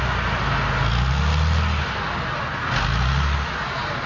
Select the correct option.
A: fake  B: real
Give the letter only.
B